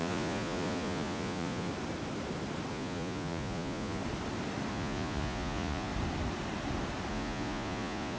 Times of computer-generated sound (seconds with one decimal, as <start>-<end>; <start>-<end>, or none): 0.0-1.7; 2.7-4.0; 4.7-5.9; 7.1-8.2